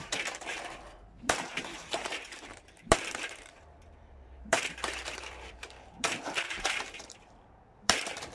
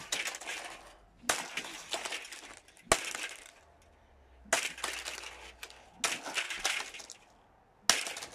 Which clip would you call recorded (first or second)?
second